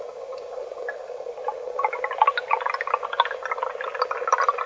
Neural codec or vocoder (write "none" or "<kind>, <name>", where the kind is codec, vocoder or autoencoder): none